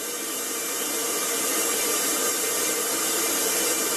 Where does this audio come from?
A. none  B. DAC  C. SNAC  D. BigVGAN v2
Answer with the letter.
D